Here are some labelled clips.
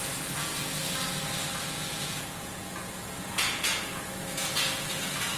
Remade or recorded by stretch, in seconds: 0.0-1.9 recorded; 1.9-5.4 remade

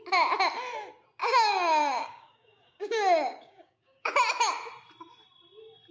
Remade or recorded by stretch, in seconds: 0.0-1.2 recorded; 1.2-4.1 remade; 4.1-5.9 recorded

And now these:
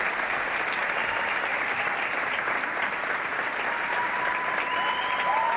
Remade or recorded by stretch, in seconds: 0.0-0.8 recorded; 0.8-2.8 remade; 2.8-5.6 recorded

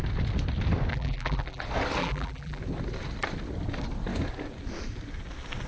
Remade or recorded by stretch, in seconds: 0.0-0.9 recorded; 0.9-1.6 remade; 1.6-2.0 recorded; 2.0-2.6 remade; 2.6-5.7 recorded

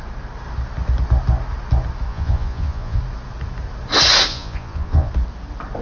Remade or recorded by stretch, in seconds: 0.0-2.1 recorded; 2.1-3.0 remade; 3.0-4.3 recorded; 4.3-5.1 remade; 5.1-5.8 recorded